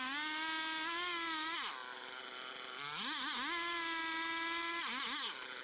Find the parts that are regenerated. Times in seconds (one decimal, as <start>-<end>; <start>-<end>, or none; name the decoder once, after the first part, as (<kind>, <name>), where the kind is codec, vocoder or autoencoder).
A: none